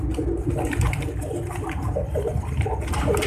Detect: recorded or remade recorded